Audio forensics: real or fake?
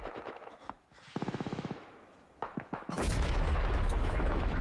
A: fake